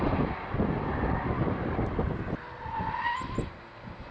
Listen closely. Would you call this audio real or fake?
real